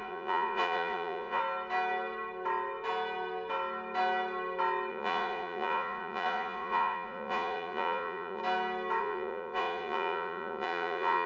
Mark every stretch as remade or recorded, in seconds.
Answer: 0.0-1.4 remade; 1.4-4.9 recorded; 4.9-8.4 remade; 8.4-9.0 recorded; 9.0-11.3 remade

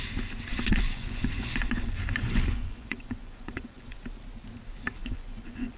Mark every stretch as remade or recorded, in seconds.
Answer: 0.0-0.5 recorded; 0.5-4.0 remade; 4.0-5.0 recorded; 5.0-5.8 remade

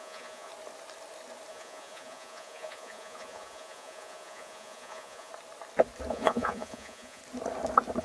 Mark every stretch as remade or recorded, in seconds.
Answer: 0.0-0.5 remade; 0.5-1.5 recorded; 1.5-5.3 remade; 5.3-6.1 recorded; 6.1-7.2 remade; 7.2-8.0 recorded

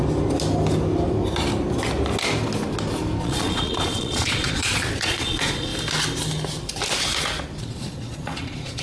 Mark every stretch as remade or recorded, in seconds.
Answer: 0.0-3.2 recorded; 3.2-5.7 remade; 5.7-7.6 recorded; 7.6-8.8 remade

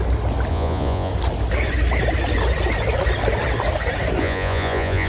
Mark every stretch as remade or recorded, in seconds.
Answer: 0.0-0.5 recorded; 0.5-1.1 remade; 1.1-4.2 recorded; 4.2-5.1 remade

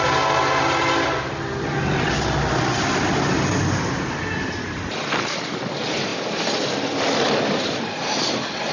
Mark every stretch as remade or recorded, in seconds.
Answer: 0.0-8.7 recorded

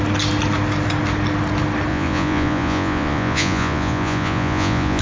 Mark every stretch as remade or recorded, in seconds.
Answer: 0.0-1.9 recorded; 1.9-5.0 remade

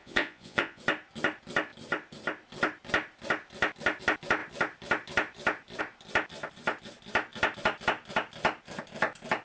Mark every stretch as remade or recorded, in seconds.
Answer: 0.0-0.8 remade; 0.8-9.4 recorded